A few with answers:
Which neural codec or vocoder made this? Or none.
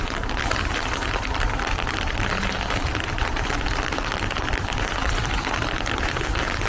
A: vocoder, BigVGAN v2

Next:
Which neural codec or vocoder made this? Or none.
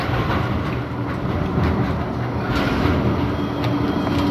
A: none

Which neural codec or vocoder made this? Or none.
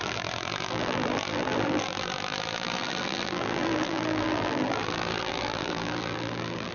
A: vocoder, BigVGAN v2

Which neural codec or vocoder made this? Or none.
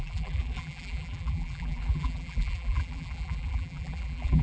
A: vocoder, BigVGAN v2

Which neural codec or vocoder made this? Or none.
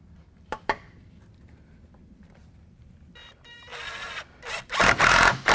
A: vocoder, BigVGAN v2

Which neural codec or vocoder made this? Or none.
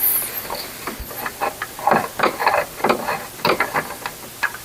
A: none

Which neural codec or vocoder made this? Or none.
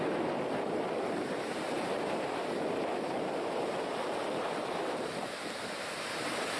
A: vocoder, BigVGAN v2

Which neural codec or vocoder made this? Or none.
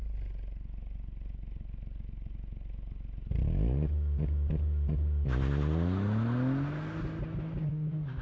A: none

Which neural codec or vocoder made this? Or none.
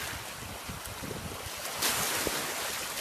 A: none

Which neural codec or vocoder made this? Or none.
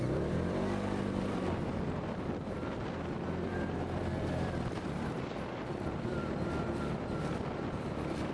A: vocoder, BigVGAN v2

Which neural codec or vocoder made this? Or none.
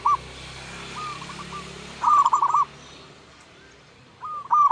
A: none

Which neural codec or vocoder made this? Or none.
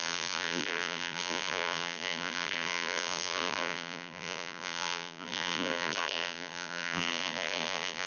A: vocoder, BigVGAN v2